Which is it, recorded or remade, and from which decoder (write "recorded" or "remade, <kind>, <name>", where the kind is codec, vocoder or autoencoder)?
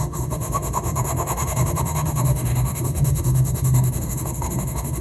remade, autoencoder, DAC-VAE